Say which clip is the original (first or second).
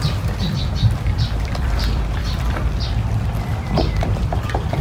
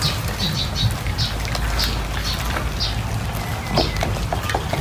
second